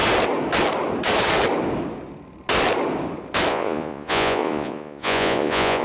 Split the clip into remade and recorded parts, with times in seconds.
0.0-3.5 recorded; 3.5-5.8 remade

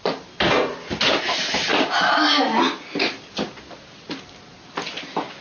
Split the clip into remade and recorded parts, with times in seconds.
0.0-5.4 recorded

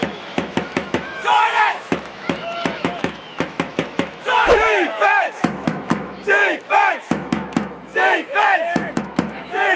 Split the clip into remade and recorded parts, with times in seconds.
0.0-9.8 remade

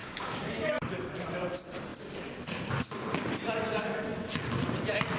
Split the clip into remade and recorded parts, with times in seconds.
0.0-0.9 remade; 0.9-5.2 recorded